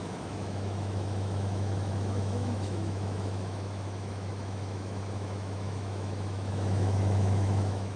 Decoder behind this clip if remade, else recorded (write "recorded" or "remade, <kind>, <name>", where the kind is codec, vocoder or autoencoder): remade, autoencoder, DAC-VAE